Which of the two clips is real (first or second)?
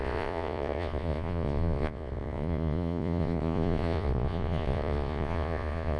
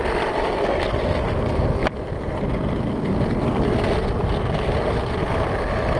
second